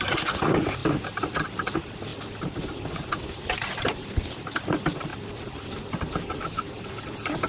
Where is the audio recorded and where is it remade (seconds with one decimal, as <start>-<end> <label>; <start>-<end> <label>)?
0.0-0.8 recorded; 0.8-1.7 remade; 1.7-5.1 recorded; 5.1-6.8 remade; 6.8-7.5 recorded